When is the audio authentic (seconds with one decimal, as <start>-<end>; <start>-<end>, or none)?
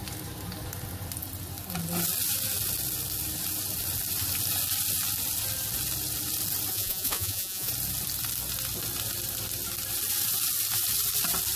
0.0-6.7; 7.7-11.6